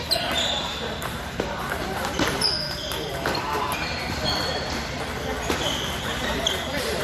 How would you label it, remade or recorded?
remade